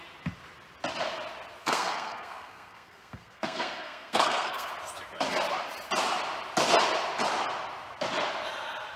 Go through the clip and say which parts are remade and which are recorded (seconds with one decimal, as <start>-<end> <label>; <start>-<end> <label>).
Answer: 0.0-1.6 recorded; 1.6-4.7 remade; 4.7-9.0 recorded